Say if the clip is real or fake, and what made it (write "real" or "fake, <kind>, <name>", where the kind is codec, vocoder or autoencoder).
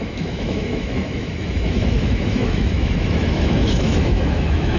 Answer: fake, autoencoder, DAC-VAE